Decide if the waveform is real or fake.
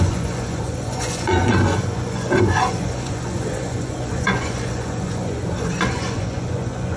fake